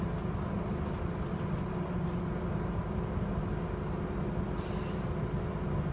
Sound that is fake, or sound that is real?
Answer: real